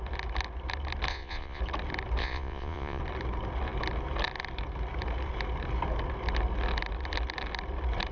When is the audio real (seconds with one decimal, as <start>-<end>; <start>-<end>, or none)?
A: 0.0-1.1; 1.6-2.2; 3.0-8.1